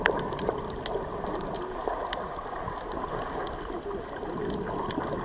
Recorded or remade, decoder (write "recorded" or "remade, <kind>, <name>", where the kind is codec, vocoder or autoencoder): recorded